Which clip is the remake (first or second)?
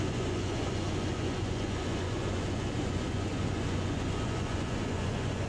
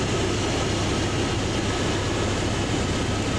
first